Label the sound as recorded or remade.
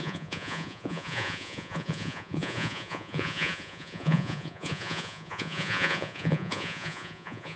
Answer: remade